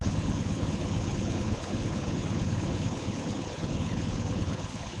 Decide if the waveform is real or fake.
fake